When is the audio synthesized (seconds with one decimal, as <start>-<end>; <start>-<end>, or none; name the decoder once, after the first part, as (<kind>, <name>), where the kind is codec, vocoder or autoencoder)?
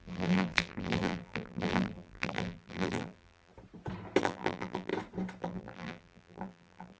0.0-3.5 (vocoder, BigVGAN v2); 4.2-4.9; 5.4-7.0